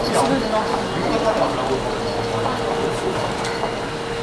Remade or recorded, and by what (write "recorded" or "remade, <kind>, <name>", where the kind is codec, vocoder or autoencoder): recorded